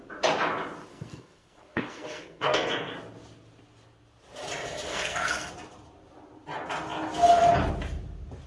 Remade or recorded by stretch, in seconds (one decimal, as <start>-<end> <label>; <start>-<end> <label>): 0.0-0.9 recorded; 0.9-2.9 remade; 2.9-4.9 recorded; 4.9-5.5 remade; 5.5-8.5 recorded